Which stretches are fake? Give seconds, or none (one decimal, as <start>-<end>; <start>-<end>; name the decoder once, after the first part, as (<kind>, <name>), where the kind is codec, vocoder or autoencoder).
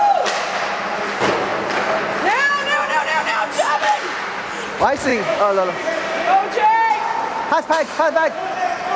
5.1-5.7 (autoencoder, DAC-VAE)